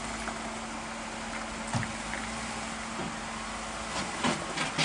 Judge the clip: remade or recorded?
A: recorded